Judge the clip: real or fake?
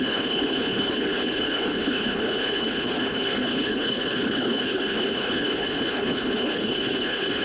fake